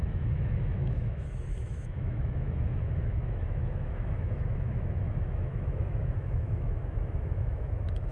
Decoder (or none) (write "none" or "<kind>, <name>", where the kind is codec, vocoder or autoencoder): autoencoder, DAC-VAE